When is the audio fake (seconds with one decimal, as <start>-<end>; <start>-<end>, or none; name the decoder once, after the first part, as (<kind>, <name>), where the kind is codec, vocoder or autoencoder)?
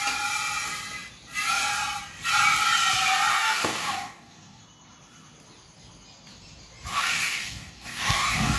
3.3-4.6 (codec, DAC); 6.9-8.6